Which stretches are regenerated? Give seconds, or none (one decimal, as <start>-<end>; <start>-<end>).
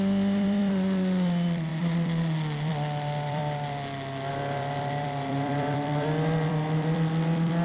0.0-3.4; 4.3-7.6